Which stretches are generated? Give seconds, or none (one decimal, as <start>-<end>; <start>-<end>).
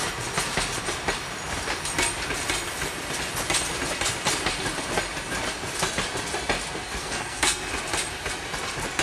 7.0-7.7